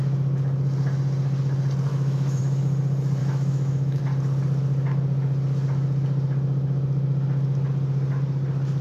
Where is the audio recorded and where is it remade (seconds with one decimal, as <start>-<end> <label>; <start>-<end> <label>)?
0.0-1.9 recorded; 1.9-2.4 remade; 2.4-3.2 recorded; 3.2-4.0 remade; 4.0-8.8 recorded